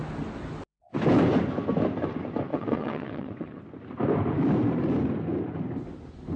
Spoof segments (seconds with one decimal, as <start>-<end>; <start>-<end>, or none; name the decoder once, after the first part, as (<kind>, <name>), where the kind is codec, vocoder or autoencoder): 2.5-3.6 (vocoder, WaveNeXt)